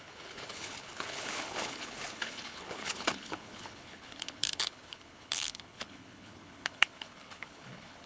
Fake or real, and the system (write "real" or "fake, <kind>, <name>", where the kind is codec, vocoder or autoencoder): fake, codec, HILCodec